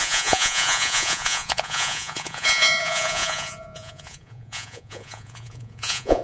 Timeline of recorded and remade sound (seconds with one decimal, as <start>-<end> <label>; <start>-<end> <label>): 0.0-6.2 remade